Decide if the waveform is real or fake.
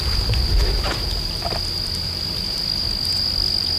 real